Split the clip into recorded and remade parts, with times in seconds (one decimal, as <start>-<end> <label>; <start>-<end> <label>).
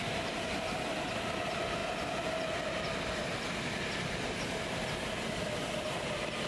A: 0.0-6.5 recorded